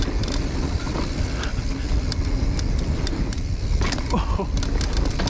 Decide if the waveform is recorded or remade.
recorded